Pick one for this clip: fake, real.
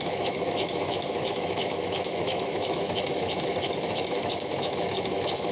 fake